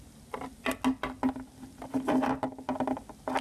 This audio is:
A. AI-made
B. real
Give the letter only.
B